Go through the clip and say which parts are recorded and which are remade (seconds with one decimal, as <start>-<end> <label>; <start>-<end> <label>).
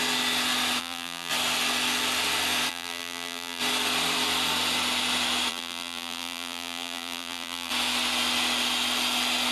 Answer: 0.0-0.8 recorded; 0.8-1.3 remade; 1.3-2.7 recorded; 2.7-3.6 remade; 3.6-5.5 recorded; 5.5-7.7 remade; 7.7-9.5 recorded